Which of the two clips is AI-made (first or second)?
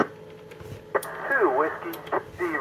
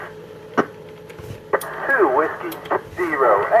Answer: second